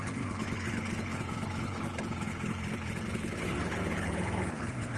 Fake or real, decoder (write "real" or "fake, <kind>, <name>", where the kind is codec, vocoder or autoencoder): fake, codec, HILCodec